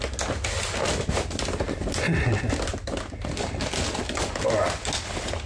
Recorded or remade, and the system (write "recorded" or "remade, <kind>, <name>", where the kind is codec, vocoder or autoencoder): recorded